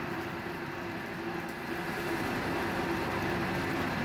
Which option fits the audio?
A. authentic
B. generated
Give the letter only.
A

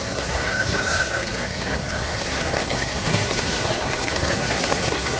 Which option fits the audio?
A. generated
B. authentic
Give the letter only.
A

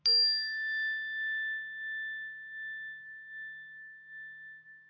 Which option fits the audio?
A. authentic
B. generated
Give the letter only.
A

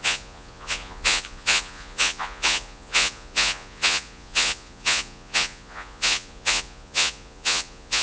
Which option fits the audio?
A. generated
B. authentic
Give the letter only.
A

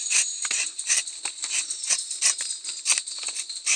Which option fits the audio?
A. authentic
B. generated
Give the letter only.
A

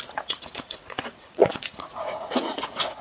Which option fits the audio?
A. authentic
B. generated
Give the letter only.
B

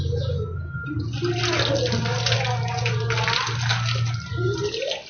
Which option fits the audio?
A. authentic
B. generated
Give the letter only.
A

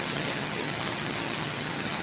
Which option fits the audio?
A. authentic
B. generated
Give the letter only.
B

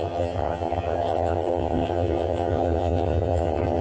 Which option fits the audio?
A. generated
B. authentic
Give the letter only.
A